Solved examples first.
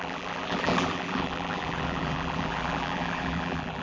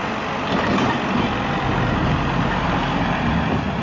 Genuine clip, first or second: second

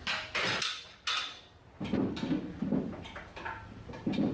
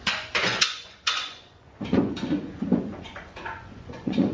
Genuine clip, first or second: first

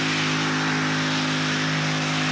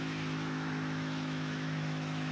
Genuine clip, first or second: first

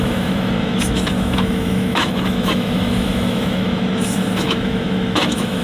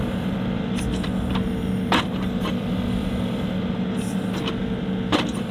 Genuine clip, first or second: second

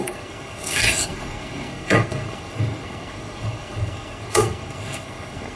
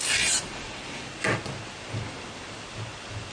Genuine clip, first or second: second